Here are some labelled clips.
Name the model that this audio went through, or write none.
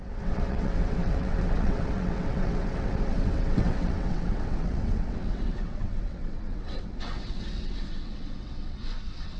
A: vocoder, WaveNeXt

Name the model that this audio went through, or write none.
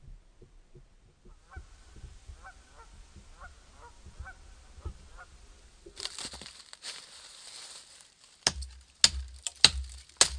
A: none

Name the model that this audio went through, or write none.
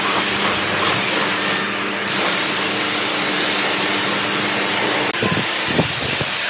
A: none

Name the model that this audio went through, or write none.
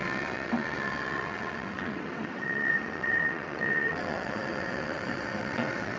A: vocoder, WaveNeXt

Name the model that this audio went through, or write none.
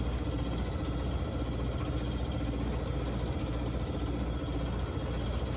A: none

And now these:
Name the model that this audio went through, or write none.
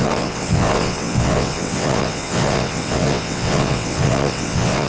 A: vocoder, WaveNeXt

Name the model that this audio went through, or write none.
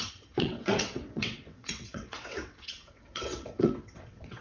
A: vocoder, WaveNeXt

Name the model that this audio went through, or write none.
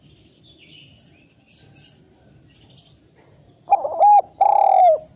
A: none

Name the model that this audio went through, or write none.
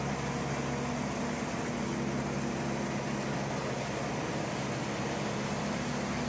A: none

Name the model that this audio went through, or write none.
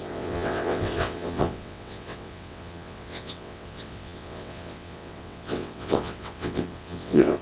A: vocoder, WaveNeXt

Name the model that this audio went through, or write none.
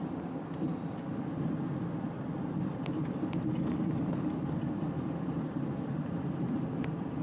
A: none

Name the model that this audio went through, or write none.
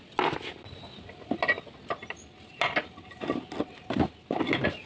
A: none